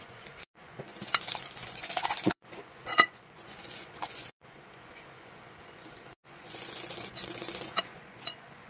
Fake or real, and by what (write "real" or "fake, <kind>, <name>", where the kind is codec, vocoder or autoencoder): fake, vocoder, Vocos